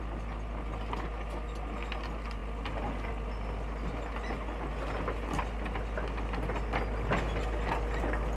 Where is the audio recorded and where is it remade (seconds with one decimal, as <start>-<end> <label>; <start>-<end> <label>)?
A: 0.0-8.4 recorded